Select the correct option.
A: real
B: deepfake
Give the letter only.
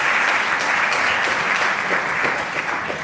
A